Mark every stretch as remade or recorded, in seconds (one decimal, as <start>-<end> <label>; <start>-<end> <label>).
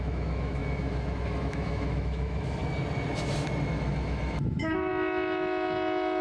0.0-2.6 remade; 2.6-3.7 recorded; 3.7-4.9 remade; 4.9-6.2 recorded